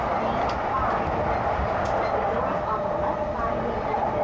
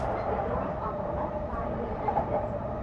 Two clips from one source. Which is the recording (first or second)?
first